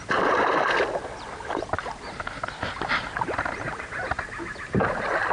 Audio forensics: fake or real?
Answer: real